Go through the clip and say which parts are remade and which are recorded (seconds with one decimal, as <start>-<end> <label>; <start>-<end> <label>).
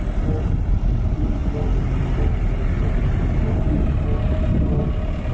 0.0-5.3 recorded